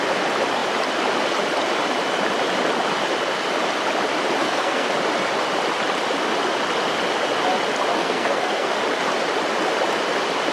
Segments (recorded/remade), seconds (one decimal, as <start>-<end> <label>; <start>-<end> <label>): 0.0-4.4 recorded; 4.4-4.9 remade; 4.9-7.9 recorded; 7.9-8.7 remade; 8.7-10.5 recorded